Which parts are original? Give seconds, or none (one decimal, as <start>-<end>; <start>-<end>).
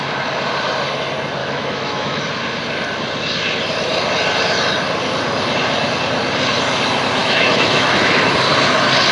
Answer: 0.0-1.4; 2.2-7.2; 8.3-9.1